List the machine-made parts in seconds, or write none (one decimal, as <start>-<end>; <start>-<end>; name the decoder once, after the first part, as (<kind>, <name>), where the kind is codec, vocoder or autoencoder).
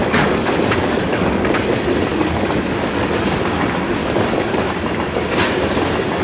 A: 0.0-1.7 (codec, DAC); 2.1-3.4; 4.0-4.6